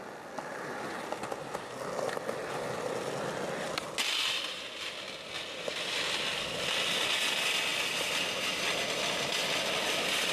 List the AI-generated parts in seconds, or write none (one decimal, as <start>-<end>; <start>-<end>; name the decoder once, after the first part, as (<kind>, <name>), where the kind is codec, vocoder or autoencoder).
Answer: none